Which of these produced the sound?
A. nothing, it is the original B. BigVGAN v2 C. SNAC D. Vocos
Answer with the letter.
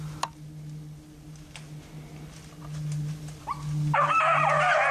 A